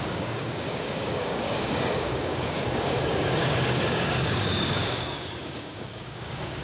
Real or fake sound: fake